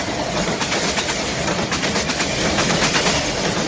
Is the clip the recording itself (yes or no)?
yes